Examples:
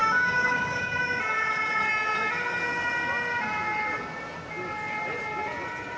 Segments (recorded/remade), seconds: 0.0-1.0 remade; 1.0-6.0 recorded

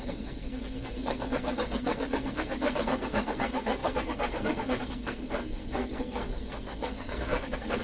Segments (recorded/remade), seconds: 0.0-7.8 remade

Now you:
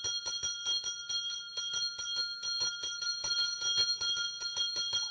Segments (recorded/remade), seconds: 0.0-5.1 recorded